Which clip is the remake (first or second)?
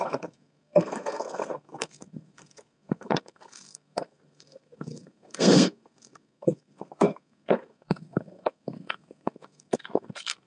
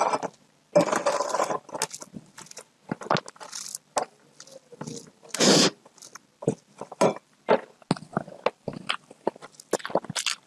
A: first